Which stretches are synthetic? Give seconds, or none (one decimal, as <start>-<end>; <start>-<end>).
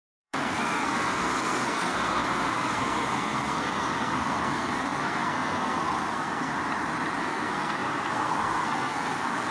0.0-6.5; 7.2-9.5